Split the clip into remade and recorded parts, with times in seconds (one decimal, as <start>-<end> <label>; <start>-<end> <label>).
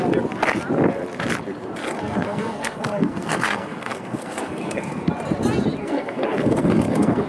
0.0-1.8 recorded; 1.8-5.1 remade; 5.1-5.8 recorded; 5.8-7.3 remade